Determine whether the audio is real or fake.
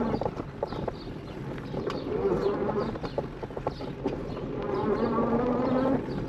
real